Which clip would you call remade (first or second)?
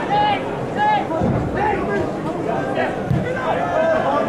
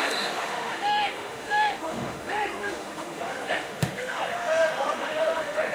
second